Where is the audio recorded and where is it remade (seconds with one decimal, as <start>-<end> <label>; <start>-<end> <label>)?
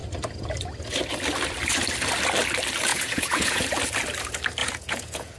0.0-2.9 recorded; 2.9-3.6 remade; 3.6-4.6 recorded; 4.6-5.4 remade